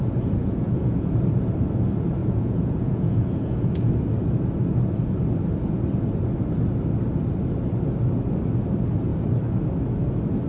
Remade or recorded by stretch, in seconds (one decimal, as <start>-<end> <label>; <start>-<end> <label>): 0.0-0.4 recorded; 0.4-1.1 remade; 1.1-2.2 recorded; 2.2-3.9 remade; 3.9-10.5 recorded